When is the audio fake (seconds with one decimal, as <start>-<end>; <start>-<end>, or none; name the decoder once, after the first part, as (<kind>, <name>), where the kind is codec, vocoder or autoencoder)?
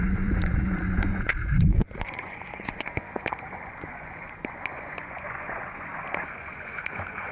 0.0-7.3 (vocoder, Vocos)